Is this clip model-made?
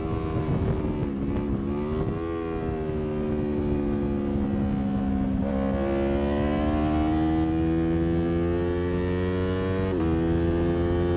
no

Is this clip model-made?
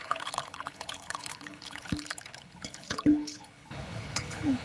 yes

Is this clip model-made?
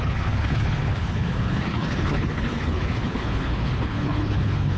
yes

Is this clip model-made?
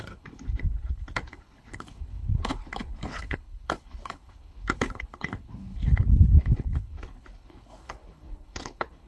yes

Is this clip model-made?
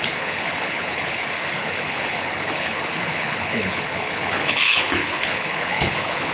yes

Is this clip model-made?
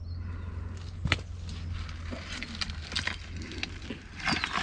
no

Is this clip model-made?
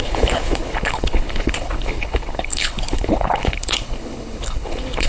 yes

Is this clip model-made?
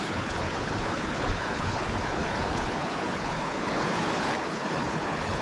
yes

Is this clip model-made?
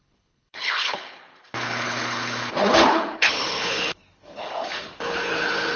yes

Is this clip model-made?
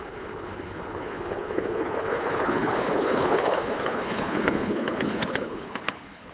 yes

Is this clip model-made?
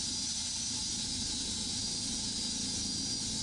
no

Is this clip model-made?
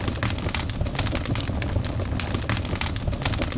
no